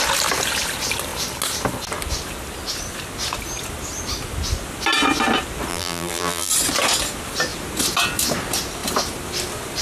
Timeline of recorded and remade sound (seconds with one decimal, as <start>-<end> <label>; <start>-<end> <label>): 0.0-5.7 recorded; 5.7-6.5 remade; 6.5-9.8 recorded